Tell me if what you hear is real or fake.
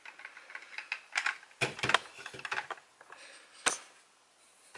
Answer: real